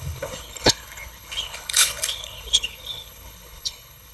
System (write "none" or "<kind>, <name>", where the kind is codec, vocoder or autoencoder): codec, HILCodec